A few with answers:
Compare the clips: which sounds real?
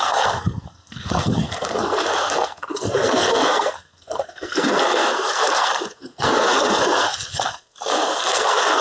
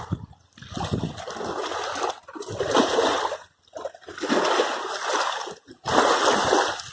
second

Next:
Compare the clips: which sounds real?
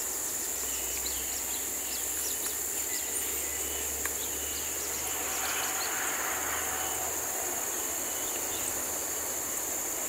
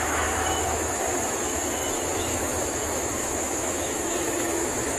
first